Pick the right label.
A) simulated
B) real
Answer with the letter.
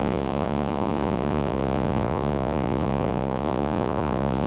A